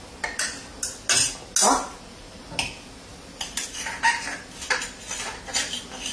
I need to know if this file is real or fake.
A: real